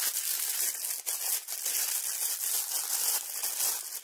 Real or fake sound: real